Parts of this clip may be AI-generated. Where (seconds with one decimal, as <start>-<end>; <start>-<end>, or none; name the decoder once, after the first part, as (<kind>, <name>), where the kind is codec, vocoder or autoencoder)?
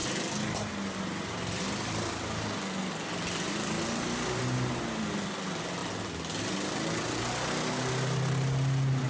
none